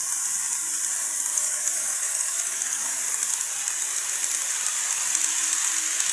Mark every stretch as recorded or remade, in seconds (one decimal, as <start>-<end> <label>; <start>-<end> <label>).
0.0-1.3 recorded; 1.3-3.0 remade; 3.0-6.1 recorded